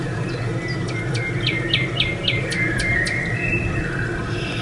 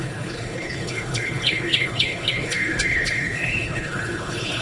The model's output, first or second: second